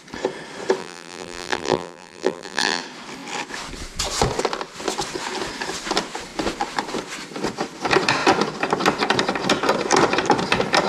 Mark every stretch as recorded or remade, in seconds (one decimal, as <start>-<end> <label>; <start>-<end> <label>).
0.0-0.8 recorded; 0.8-2.8 remade; 2.8-10.9 recorded